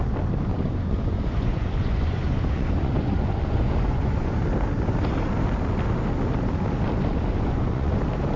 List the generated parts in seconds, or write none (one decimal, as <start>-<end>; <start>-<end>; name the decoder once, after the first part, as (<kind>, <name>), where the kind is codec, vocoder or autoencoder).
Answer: 0.5-4.3 (vocoder, Vocos); 7.3-8.0